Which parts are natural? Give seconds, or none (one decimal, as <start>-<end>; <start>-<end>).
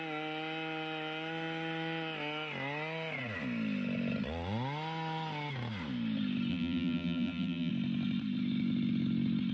0.0-6.5; 7.7-9.5